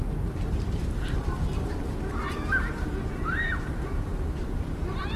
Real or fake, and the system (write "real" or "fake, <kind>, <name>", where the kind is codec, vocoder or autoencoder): fake, vocoder, BigVGAN v2